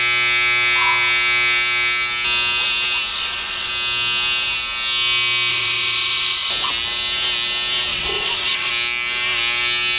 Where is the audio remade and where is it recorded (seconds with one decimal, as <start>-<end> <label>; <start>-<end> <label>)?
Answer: 0.0-3.1 recorded; 3.1-3.7 remade; 3.7-5.5 recorded; 5.5-6.5 remade; 6.5-7.9 recorded; 7.9-8.7 remade; 8.7-10.0 recorded